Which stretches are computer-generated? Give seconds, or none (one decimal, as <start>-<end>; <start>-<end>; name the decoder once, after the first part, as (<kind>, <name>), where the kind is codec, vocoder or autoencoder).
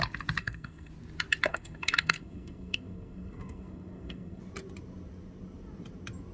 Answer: 0.4-0.9 (codec, SNAC); 1.5-4.4